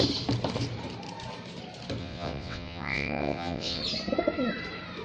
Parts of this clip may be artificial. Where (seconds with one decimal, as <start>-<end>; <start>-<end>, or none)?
2.0-3.8